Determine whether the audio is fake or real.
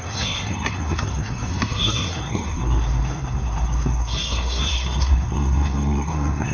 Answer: fake